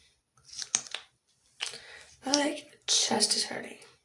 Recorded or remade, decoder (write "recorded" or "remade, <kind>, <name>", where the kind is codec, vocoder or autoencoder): recorded